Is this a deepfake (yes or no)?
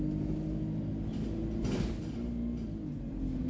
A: no